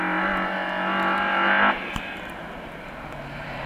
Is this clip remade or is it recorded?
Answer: recorded